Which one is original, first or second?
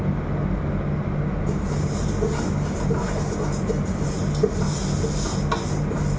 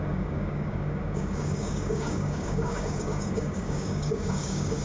first